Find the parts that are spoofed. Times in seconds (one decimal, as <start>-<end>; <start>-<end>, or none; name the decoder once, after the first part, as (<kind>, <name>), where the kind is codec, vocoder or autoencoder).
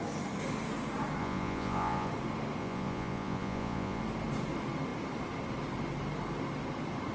1.2-2.1 (vocoder, Vocos); 2.6-4.0